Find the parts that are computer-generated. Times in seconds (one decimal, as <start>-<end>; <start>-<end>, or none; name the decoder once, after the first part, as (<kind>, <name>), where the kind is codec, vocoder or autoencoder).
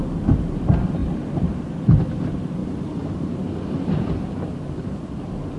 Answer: none